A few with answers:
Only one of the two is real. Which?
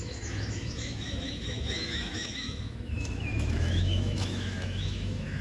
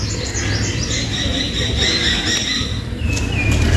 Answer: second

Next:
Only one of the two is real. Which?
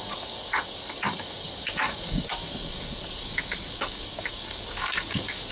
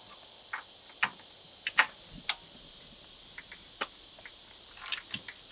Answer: second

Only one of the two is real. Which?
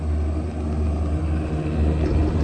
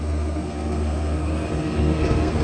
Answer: first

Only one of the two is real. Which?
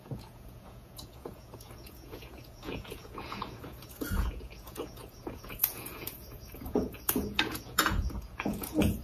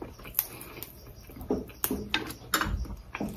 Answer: second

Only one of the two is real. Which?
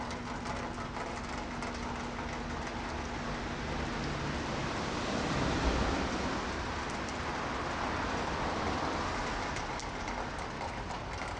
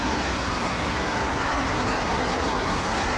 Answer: first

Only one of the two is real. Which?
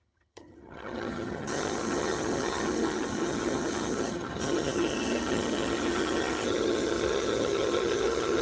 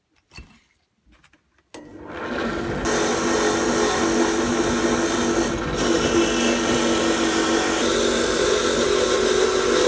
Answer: second